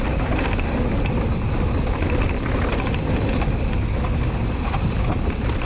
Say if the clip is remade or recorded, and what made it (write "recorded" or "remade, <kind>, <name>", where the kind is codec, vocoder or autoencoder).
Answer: recorded